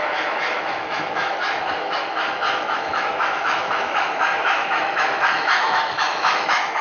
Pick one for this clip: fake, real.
fake